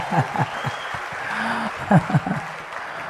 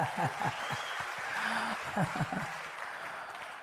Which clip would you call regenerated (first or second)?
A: second